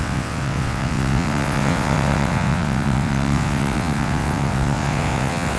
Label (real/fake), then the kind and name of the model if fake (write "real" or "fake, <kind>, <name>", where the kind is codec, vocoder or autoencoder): fake, vocoder, WaveNeXt